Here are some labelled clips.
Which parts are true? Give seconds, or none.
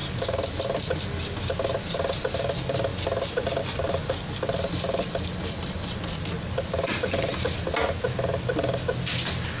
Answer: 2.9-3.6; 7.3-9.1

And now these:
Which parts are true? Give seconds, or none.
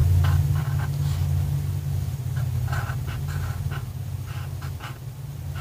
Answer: 0.0-1.2; 3.6-5.6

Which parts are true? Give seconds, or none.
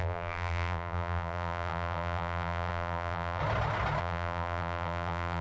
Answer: 3.4-4.0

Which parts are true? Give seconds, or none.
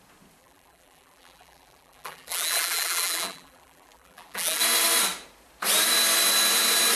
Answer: 0.0-0.4; 4.6-7.0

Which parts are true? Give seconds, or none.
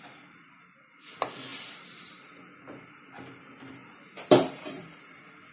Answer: 0.0-3.8; 4.7-5.5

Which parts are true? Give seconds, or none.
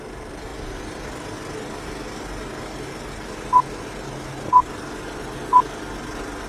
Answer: 0.0-6.5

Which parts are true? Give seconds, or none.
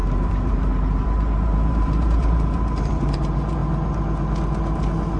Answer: 3.6-5.2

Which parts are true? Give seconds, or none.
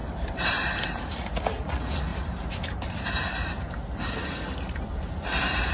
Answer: 0.5-2.1; 3.6-5.7